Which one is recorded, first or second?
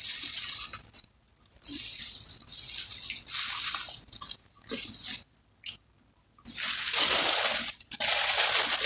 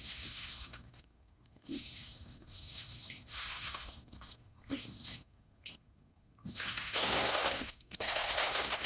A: first